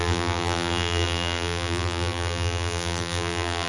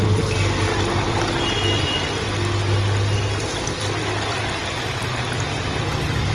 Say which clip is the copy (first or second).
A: first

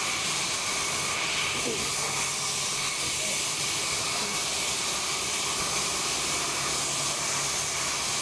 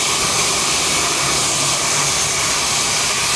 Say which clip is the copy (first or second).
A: second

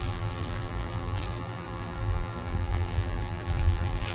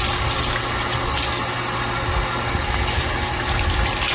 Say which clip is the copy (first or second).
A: first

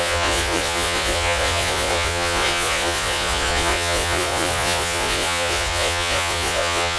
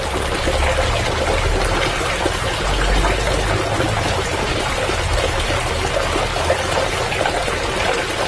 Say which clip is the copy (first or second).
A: first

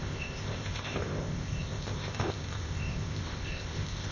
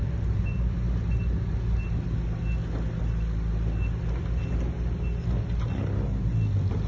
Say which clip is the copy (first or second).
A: first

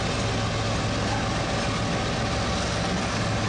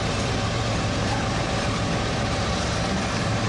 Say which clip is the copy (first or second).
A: second